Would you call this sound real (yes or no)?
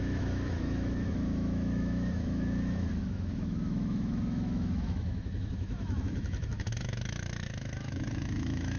no